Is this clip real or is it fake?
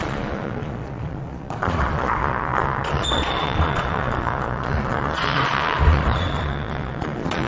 fake